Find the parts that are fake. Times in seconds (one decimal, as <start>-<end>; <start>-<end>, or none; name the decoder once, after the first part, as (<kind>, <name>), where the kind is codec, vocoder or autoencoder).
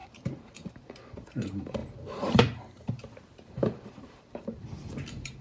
0.0-5.4 (vocoder, BigVGAN v2)